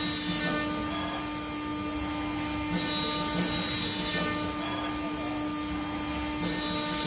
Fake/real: real